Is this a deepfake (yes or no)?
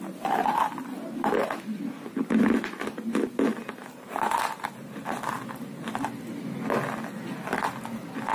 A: no